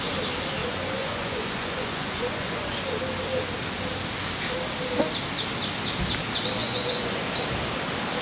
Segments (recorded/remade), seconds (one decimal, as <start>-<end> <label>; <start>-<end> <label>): 0.0-0.6 recorded; 0.6-2.7 remade; 2.7-6.6 recorded; 6.6-7.2 remade; 7.2-8.2 recorded